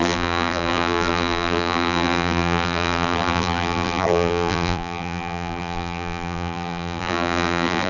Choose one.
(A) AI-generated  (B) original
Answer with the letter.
A